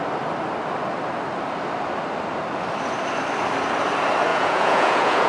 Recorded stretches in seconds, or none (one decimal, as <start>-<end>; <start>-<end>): 0.0-4.3